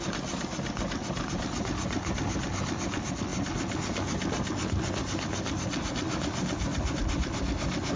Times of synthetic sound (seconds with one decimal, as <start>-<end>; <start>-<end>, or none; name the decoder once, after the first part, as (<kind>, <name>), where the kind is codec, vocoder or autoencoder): none